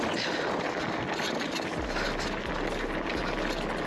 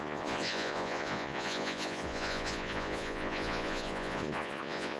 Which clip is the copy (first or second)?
second